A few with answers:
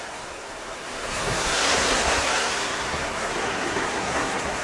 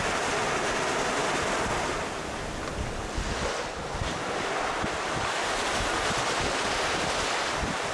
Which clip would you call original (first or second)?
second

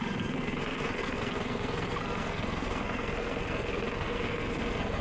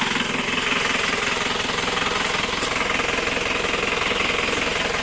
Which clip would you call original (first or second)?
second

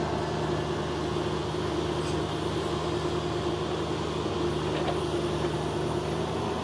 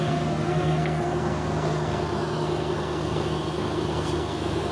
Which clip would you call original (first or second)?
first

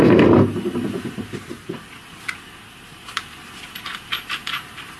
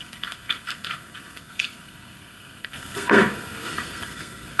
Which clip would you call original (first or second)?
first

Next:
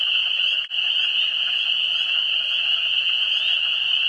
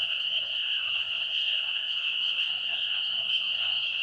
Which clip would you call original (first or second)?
first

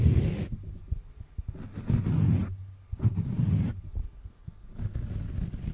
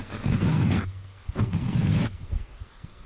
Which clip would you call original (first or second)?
first